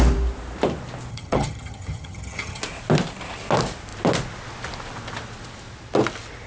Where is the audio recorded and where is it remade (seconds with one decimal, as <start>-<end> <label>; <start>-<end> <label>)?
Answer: 0.0-1.1 recorded; 1.1-2.6 remade; 2.6-6.5 recorded